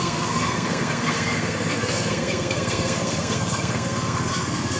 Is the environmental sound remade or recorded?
remade